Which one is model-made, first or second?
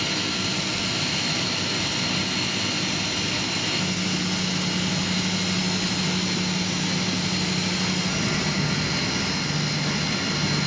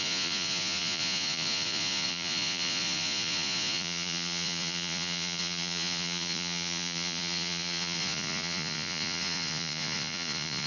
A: second